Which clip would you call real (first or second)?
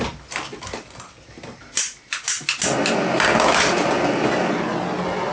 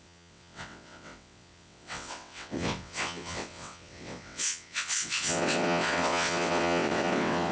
first